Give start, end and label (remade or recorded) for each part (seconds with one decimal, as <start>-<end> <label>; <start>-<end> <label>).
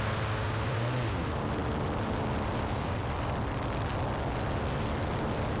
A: 0.0-5.6 recorded